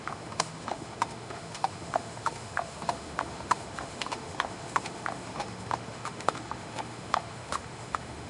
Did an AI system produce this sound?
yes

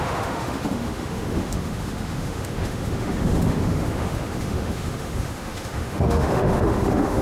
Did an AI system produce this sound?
yes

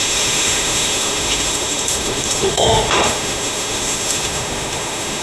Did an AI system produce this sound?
yes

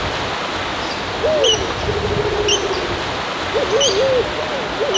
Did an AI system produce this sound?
no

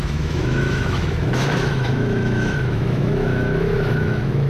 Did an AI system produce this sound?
yes